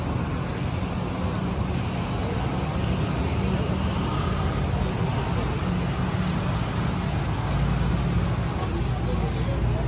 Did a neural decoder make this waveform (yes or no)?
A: no